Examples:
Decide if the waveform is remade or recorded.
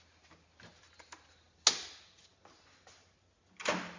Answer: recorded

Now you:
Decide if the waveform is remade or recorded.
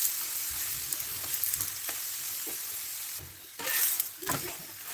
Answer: remade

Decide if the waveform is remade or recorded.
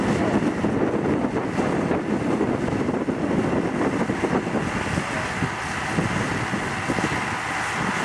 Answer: recorded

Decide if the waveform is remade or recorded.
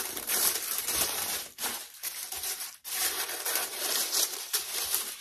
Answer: remade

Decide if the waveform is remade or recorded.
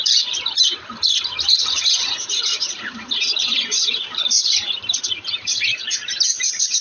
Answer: remade